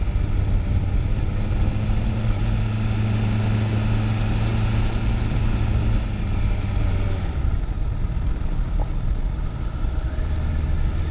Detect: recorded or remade recorded